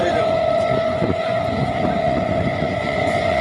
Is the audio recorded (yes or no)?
no